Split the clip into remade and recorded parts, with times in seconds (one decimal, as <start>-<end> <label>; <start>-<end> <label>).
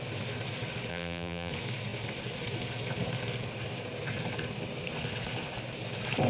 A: 0.0-0.9 recorded; 0.9-1.5 remade; 1.5-6.3 recorded